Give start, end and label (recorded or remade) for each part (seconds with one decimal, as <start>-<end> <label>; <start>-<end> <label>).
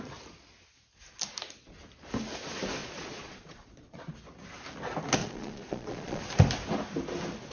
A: 0.0-2.8 recorded; 2.8-4.1 remade; 4.1-5.2 recorded; 5.2-6.2 remade; 6.2-7.5 recorded